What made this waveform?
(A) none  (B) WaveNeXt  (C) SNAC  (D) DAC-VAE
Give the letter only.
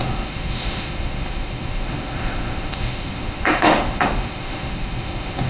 D